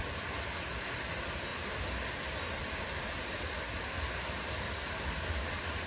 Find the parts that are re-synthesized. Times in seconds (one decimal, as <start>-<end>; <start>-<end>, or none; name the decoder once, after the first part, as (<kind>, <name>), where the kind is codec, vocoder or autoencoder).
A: none